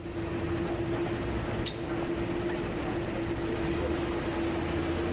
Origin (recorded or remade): recorded